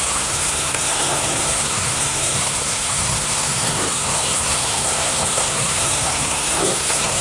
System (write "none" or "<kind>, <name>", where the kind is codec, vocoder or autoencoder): codec, SNAC